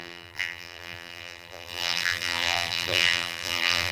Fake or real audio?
fake